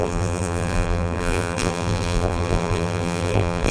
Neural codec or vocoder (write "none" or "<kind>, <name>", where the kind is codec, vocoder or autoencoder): vocoder, BigVGAN v2